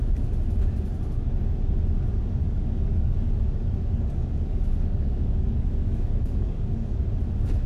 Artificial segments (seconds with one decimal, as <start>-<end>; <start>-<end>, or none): 2.4-7.0